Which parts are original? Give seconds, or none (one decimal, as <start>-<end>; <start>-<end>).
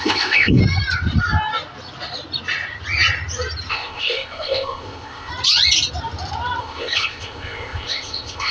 0.6-3.7; 5.3-6.6